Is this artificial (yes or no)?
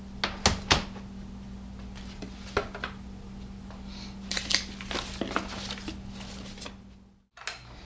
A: no